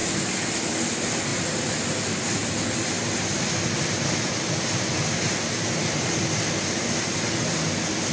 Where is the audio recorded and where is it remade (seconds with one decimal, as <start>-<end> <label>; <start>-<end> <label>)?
0.0-8.1 recorded